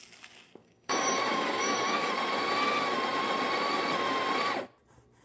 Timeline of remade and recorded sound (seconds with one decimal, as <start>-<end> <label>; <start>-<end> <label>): 0.0-0.6 recorded; 0.6-2.1 remade; 2.1-5.2 recorded